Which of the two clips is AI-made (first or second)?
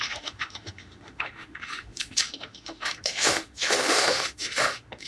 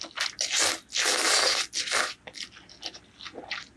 first